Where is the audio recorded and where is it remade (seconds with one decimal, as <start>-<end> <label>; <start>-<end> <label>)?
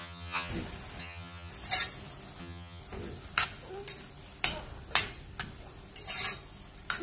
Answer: 0.0-0.5 remade; 0.5-1.0 recorded; 1.0-1.5 remade; 1.5-2.4 recorded; 2.4-2.8 remade; 2.8-7.0 recorded